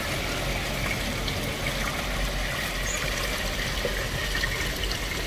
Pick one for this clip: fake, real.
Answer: real